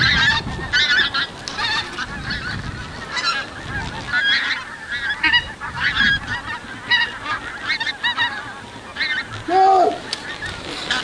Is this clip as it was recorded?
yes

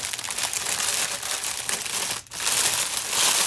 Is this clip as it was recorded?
yes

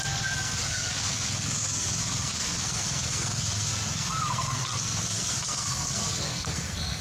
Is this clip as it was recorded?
no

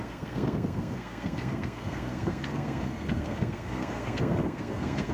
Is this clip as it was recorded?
no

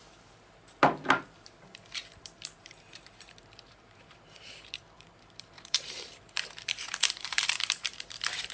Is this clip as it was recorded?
no